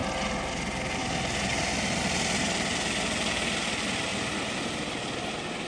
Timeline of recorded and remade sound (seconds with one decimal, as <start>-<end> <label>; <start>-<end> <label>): 0.0-5.7 recorded